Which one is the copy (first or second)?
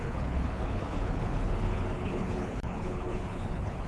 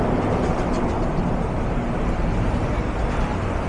first